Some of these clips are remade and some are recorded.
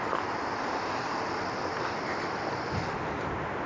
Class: recorded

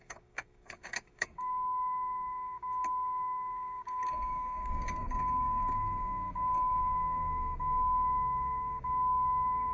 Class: remade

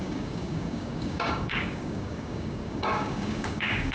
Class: remade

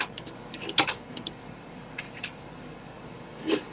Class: remade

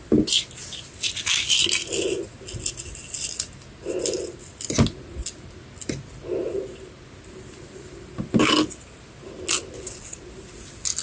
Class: recorded